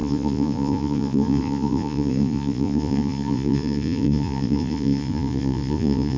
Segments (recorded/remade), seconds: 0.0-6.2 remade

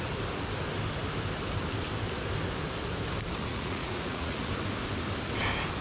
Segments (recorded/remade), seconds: 0.0-3.4 recorded; 3.4-4.5 remade; 4.5-5.8 recorded

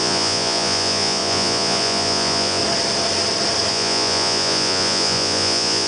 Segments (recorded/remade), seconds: 0.0-2.6 remade; 2.6-3.7 recorded; 3.7-5.9 remade